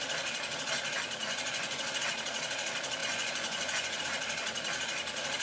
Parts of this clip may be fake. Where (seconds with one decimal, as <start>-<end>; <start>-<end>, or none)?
1.2-1.8; 3.0-4.0